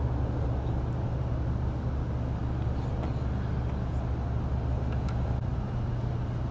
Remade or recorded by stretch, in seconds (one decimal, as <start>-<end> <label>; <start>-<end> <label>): 0.0-6.5 recorded